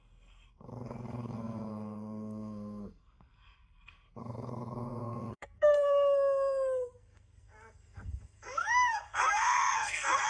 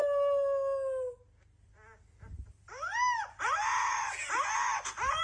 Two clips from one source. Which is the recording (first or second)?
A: second